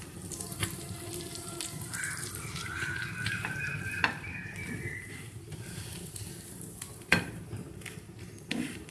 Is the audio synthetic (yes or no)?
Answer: yes